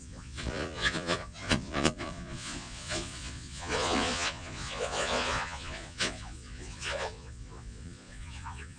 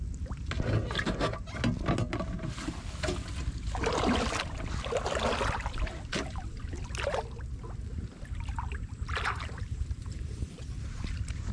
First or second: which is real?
second